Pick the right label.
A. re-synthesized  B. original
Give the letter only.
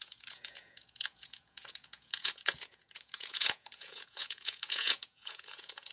A